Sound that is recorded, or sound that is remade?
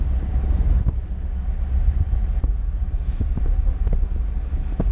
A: recorded